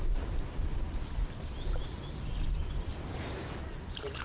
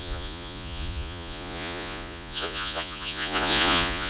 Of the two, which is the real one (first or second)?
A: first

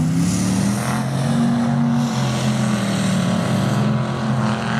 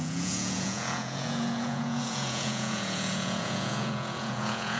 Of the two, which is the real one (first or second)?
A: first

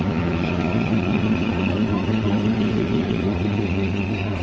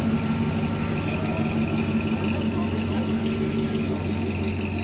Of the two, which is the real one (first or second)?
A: second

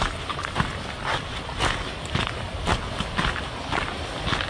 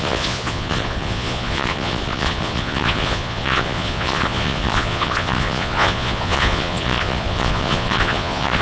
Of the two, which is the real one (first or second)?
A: first